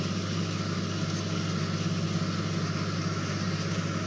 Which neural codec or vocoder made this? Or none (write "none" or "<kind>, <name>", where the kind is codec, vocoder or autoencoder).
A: none